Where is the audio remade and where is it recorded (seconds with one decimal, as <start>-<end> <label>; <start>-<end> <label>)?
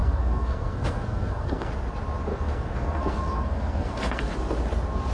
0.0-1.7 remade; 1.7-2.3 recorded; 2.3-4.3 remade; 4.3-5.1 recorded